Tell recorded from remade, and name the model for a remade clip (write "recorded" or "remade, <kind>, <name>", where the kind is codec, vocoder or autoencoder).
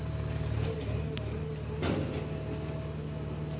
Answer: recorded